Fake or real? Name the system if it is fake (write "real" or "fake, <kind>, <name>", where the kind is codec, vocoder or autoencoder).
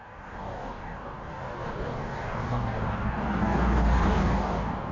fake, codec, DAC